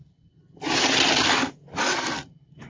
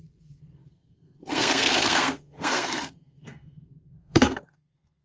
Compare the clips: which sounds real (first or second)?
first